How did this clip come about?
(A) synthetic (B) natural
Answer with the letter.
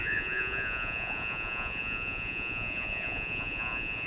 A